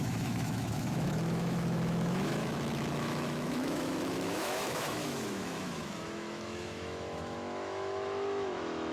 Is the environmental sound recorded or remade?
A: remade